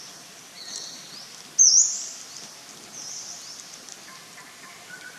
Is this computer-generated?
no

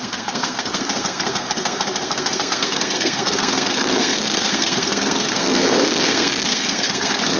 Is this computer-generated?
yes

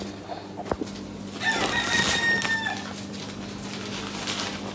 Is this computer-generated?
no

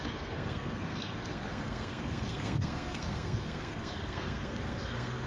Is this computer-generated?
yes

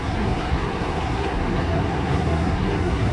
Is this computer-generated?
yes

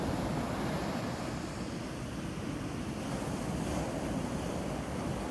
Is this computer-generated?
no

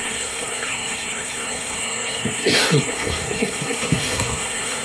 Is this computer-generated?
yes